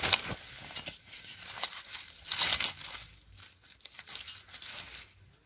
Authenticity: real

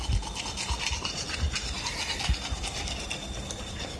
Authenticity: real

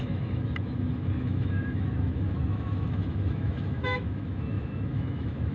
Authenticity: fake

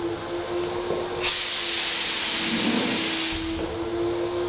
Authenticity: real